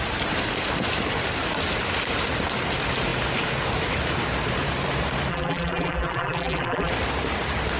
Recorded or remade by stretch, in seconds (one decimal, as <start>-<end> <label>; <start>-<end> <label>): 0.0-5.3 recorded; 5.3-6.9 remade; 6.9-7.8 recorded